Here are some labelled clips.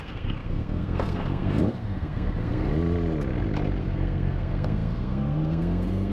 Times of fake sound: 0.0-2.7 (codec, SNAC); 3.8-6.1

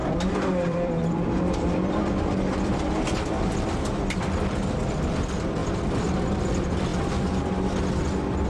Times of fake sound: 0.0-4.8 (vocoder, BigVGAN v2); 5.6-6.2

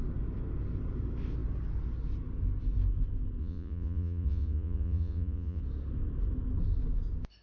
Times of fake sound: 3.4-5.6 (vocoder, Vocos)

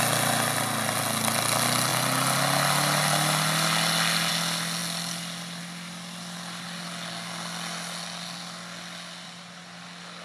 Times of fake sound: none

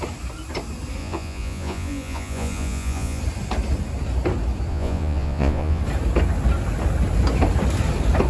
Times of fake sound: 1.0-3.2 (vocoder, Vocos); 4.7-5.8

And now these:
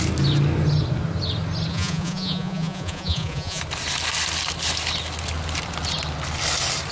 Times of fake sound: 1.7-3.6 (vocoder, Vocos)